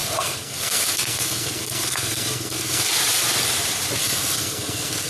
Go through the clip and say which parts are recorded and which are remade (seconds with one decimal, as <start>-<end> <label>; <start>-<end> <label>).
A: 0.0-2.9 remade; 2.9-4.0 recorded; 4.0-5.1 remade